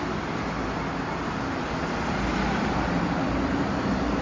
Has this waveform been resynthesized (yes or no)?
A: no